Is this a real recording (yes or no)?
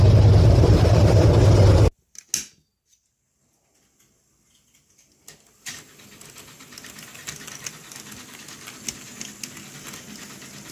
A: yes